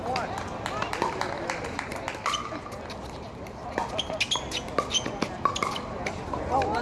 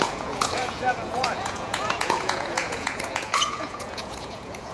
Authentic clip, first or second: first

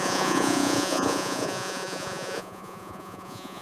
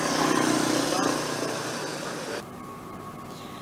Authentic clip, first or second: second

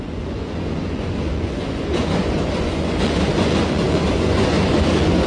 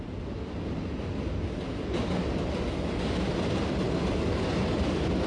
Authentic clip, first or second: second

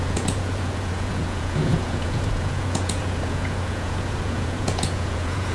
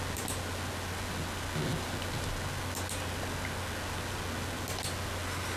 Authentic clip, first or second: second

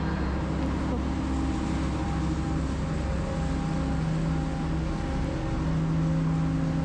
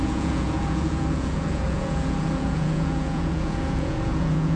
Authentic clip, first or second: first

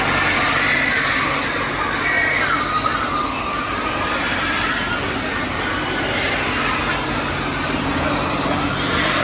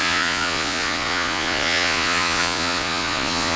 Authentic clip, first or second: first